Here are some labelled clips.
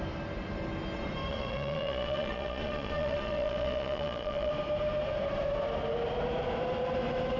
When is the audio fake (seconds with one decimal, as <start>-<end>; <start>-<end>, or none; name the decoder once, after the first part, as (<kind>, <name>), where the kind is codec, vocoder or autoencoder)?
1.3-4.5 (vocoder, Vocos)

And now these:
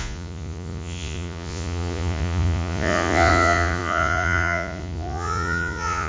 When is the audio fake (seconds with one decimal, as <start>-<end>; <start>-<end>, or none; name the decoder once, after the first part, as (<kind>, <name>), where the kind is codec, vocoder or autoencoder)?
0.0-6.1 (vocoder, Vocos)

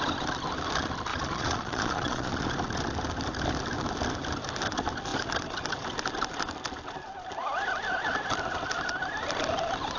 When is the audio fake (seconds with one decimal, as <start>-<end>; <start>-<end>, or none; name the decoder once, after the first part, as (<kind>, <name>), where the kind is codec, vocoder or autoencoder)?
1.1-2.4 (vocoder, Vocos)

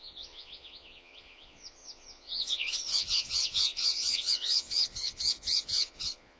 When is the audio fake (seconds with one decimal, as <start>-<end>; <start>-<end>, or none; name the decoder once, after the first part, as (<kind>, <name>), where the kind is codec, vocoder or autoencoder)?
0.0-6.4 (vocoder, Vocos)